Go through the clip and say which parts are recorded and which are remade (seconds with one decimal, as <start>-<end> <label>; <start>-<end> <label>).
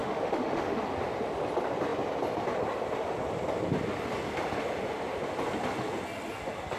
0.0-0.8 remade; 0.8-6.8 recorded